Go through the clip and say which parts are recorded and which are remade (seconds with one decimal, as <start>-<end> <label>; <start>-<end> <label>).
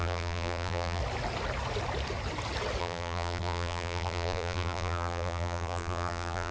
0.0-1.0 remade; 1.0-2.8 recorded; 2.8-6.5 remade